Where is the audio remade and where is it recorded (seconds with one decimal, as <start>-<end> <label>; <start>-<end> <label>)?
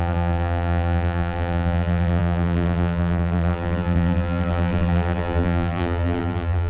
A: 0.0-6.7 remade